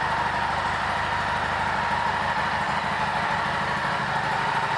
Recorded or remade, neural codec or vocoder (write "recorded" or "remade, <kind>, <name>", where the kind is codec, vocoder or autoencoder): recorded